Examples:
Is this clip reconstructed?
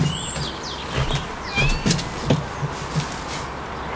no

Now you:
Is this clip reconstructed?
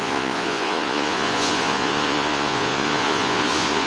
yes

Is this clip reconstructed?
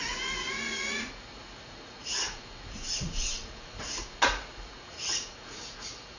yes